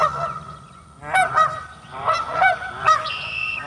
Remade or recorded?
remade